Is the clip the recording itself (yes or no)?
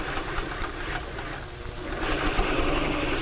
yes